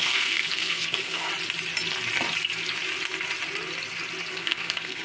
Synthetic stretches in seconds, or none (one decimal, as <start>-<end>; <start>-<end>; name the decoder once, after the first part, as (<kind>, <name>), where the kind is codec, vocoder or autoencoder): 0.0-1.3 (codec, SNAC); 4.3-5.0